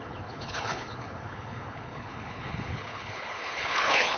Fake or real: fake